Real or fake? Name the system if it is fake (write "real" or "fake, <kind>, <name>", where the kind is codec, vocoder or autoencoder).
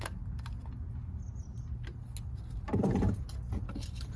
real